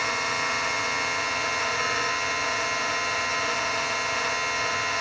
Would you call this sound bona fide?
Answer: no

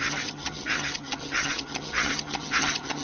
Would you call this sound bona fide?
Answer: no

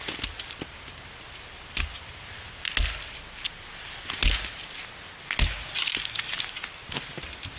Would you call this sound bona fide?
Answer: yes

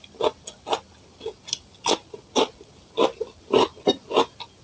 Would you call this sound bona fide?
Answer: yes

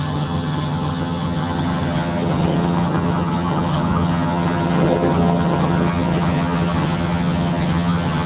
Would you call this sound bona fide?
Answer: no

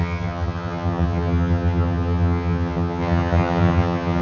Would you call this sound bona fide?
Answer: no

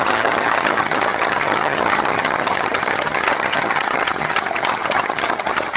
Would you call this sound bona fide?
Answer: no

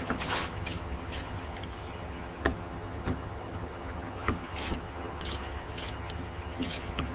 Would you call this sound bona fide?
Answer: no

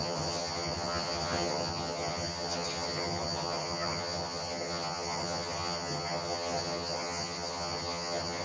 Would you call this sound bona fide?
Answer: no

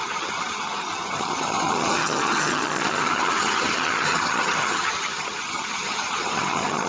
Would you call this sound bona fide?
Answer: no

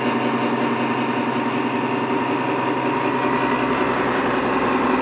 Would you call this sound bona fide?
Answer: yes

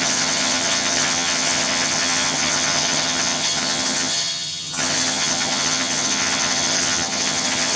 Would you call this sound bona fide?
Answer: no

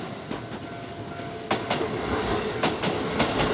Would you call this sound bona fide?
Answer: yes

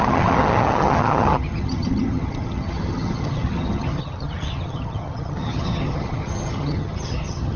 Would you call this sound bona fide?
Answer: no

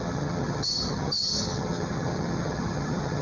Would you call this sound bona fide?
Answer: no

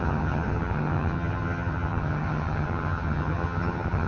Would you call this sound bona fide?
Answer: no